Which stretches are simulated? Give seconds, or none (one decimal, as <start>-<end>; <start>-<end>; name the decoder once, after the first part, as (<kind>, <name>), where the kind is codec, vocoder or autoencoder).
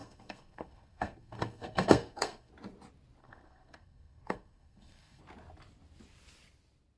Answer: 0.0-2.5 (codec, SNAC); 3.2-5.2